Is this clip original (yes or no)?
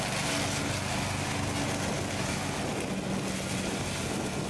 yes